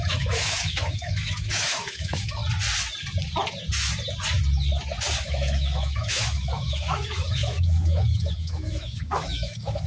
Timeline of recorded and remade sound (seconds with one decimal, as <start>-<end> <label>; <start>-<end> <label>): 0.0-2.4 remade; 2.4-5.2 recorded; 5.2-9.9 remade